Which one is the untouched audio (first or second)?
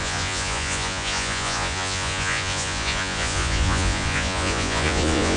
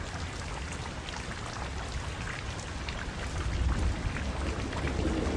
second